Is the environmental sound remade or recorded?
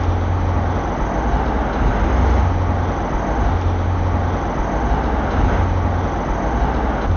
recorded